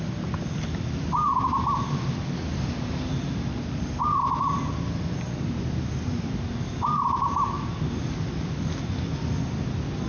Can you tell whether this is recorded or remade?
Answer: recorded